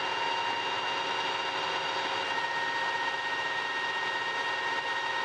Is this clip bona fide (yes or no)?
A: yes